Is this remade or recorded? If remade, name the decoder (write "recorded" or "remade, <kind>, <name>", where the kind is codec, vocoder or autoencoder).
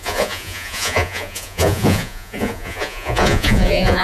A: remade, vocoder, Vocos